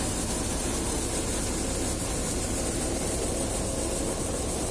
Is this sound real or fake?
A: real